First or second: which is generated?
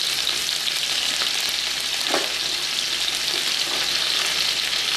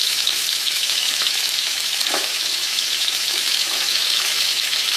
second